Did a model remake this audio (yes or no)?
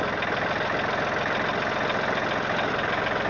no